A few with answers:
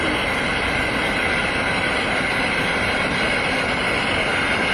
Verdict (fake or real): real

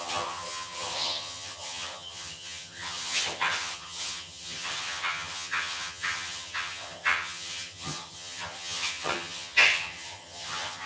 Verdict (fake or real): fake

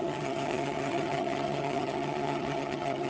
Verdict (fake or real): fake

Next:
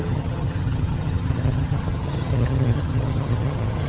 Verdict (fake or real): fake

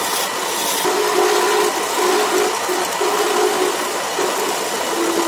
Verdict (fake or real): real